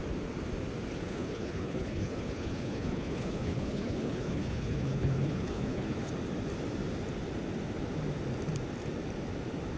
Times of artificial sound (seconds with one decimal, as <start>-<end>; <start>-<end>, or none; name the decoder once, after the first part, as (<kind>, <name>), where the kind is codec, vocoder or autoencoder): 1.0-6.1 (codec, HILCodec)